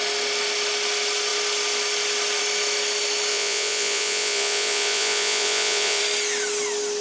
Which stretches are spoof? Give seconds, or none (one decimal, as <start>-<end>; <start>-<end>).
3.3-6.0